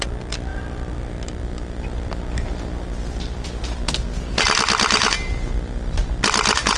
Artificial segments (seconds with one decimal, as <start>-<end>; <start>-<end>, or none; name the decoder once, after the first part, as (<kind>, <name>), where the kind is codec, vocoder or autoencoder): none